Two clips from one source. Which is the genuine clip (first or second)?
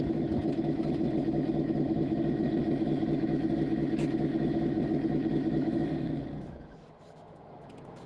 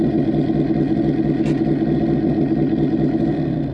second